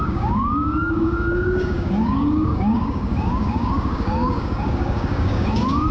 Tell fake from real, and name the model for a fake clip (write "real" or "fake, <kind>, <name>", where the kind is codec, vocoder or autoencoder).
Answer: fake, codec, DAC